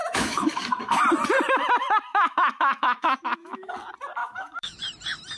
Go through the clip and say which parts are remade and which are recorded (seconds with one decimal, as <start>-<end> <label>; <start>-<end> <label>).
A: 0.0-1.0 remade; 1.0-2.1 recorded; 2.1-3.7 remade; 3.7-4.2 recorded; 4.2-4.8 remade; 4.8-5.4 recorded

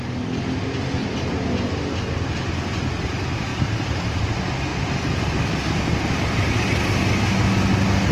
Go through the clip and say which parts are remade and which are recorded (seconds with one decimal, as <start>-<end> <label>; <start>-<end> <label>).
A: 0.0-1.0 recorded; 1.0-2.5 remade; 2.5-3.5 recorded; 3.5-4.2 remade; 4.2-4.7 recorded; 4.7-5.3 remade; 5.3-8.1 recorded

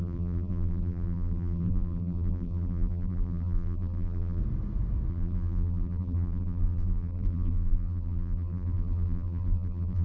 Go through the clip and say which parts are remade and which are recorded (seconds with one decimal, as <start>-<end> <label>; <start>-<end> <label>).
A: 0.0-4.4 remade; 4.4-5.1 recorded; 5.1-10.0 remade

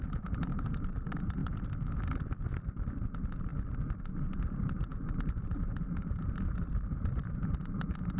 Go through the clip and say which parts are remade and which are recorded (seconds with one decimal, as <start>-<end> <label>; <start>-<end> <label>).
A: 0.0-1.4 remade; 1.4-3.0 recorded; 3.0-3.5 remade; 3.5-4.3 recorded; 4.3-8.2 remade